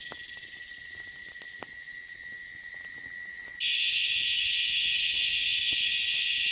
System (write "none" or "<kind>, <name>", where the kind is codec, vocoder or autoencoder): none